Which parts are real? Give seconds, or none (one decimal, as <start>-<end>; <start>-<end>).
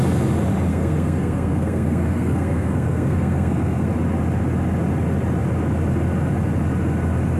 0.0-0.7; 3.9-7.4